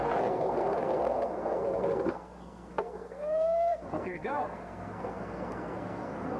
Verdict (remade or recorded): remade